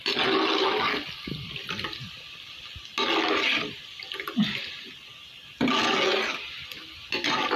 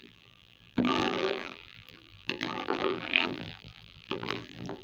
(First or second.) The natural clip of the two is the first